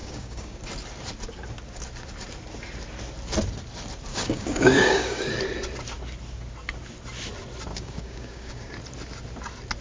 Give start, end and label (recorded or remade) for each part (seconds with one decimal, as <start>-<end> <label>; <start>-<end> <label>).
0.0-0.6 remade; 0.6-4.1 recorded; 4.1-5.2 remade; 5.2-7.7 recorded; 7.7-8.7 remade; 8.7-9.8 recorded